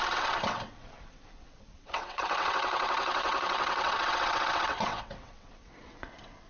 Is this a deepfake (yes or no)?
yes